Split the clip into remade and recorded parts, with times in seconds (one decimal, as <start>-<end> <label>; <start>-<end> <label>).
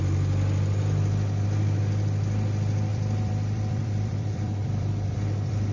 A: 0.0-2.9 recorded; 2.9-5.7 remade